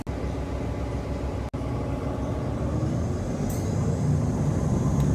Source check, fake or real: real